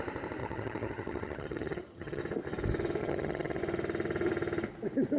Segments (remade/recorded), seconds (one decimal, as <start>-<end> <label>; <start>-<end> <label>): 0.0-0.4 recorded; 0.4-2.2 remade; 2.2-3.0 recorded; 3.0-3.6 remade; 3.6-5.2 recorded